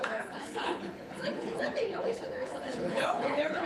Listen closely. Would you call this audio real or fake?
fake